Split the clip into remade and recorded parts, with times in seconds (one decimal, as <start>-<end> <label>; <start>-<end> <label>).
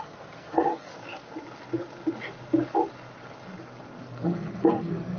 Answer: 0.0-0.9 remade; 0.9-4.0 recorded; 4.0-5.2 remade